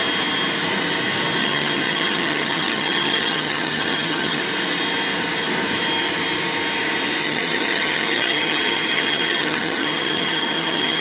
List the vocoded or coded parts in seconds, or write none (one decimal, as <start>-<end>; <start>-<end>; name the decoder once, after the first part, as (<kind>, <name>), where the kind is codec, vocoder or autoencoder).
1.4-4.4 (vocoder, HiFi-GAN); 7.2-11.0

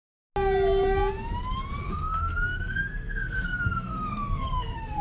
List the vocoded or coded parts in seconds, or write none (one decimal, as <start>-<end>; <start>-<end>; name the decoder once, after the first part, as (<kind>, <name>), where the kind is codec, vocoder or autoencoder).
1.8-5.0 (codec, SNAC)

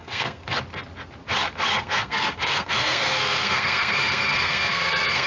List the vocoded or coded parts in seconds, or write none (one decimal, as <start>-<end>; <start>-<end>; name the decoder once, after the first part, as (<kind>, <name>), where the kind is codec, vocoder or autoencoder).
0.0-0.6 (codec, SNAC); 1.7-5.3

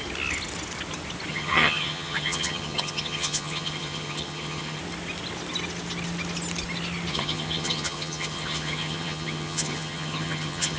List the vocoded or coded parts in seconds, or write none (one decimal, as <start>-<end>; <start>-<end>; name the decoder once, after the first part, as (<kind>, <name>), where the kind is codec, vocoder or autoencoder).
1.3-4.8 (vocoder, HiFi-GAN); 7.1-10.8

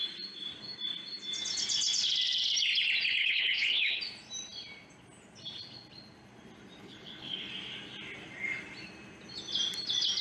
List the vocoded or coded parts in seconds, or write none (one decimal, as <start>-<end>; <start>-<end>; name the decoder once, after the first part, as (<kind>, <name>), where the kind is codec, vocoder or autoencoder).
3.2-4.0 (codec, HILCodec); 6.8-7.5

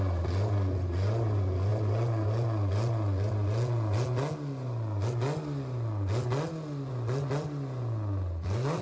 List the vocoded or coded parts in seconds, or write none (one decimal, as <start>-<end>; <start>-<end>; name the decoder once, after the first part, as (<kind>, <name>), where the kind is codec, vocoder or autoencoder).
none